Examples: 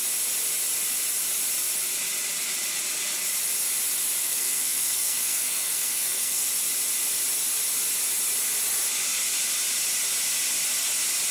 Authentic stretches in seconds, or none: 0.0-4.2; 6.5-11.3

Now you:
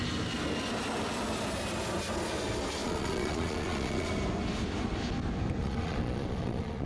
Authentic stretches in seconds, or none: 0.0-2.8; 4.1-5.6

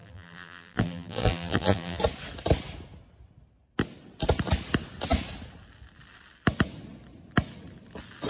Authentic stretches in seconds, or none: 2.0-8.3

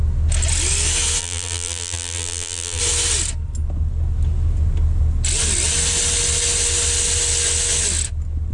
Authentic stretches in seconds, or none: 0.0-1.2; 2.8-8.5

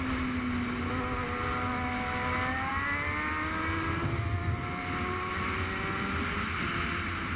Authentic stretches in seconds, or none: 0.0-7.4